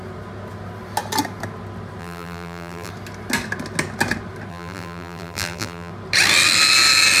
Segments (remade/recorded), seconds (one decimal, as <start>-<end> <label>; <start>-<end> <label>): 0.0-2.0 recorded; 2.0-2.9 remade; 2.9-4.5 recorded; 4.5-5.9 remade; 5.9-7.2 recorded